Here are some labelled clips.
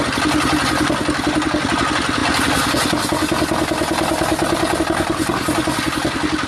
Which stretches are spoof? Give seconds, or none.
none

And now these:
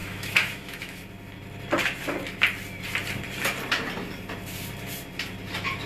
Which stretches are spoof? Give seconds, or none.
0.0-1.0

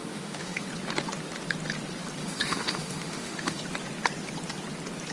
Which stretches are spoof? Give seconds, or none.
0.0-0.7; 2.2-3.6

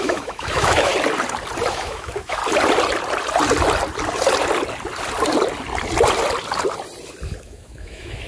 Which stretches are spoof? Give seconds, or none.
0.0-0.9; 1.7-2.4; 7.4-8.3

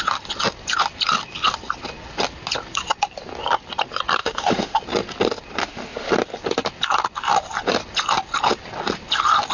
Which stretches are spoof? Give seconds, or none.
4.2-4.8; 5.6-6.1

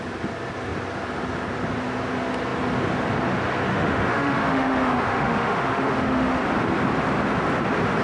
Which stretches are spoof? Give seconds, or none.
3.7-6.4